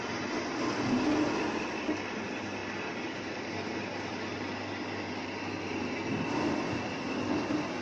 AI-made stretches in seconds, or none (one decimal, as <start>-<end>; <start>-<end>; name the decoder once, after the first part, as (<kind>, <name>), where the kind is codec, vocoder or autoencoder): none